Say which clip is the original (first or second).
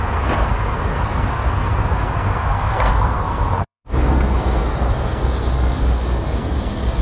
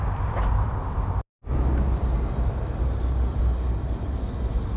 second